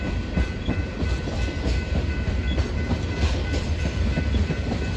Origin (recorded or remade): remade